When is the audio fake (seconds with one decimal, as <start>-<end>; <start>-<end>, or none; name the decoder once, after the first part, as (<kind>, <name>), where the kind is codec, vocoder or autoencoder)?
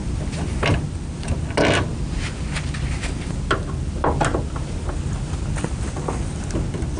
none